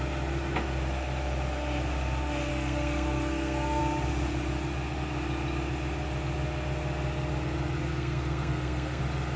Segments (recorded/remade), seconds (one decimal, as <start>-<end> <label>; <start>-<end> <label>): 0.0-2.5 recorded; 2.5-3.8 remade; 3.8-7.8 recorded; 7.8-9.0 remade; 9.0-9.4 recorded